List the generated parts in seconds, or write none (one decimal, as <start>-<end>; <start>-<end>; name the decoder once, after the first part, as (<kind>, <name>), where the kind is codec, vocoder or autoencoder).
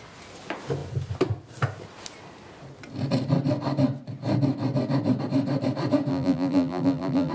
6.1-7.3 (vocoder, BigVGAN v2)